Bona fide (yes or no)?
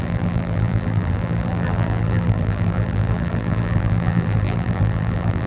no